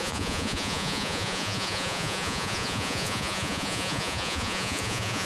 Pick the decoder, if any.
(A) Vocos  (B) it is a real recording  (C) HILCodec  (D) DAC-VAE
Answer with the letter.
A